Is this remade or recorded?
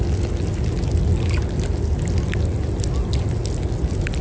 recorded